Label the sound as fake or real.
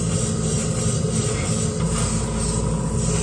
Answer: real